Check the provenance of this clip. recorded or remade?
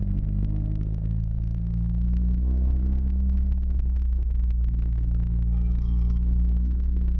remade